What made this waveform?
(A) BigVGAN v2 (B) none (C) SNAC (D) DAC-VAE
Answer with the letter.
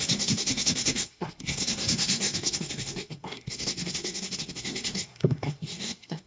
C